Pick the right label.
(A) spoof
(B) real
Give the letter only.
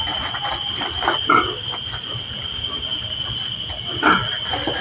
B